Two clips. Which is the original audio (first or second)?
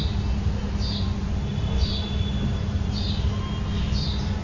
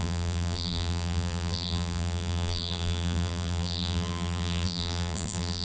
first